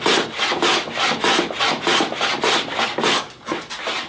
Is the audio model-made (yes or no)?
no